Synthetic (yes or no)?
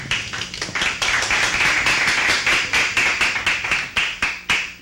no